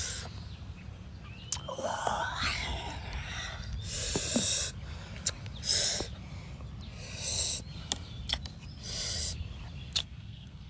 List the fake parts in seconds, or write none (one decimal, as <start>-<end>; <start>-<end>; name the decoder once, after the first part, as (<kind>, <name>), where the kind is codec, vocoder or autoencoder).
1.7-2.2 (codec, SNAC); 10.0-10.7